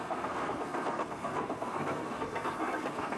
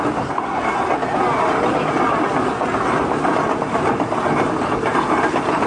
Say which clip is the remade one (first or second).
first